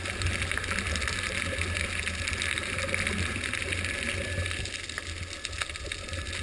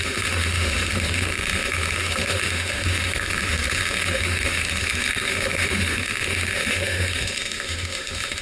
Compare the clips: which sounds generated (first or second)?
second